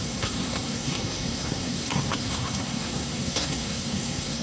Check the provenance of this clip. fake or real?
fake